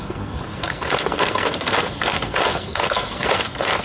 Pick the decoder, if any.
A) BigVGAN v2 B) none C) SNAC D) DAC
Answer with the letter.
C